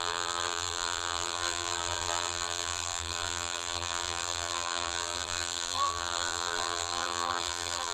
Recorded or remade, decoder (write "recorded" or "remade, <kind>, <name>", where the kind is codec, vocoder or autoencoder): remade, vocoder, BigVGAN v2